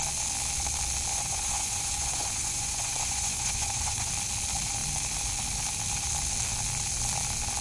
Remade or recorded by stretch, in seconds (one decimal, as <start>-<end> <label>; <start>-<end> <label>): 0.0-1.1 recorded; 1.1-4.1 remade; 4.1-7.6 recorded